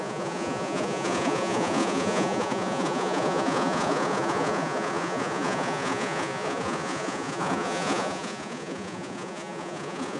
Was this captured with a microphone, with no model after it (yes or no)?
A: no